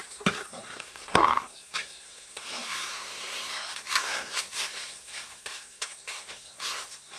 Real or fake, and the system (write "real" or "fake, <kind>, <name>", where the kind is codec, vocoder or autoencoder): fake, codec, SNAC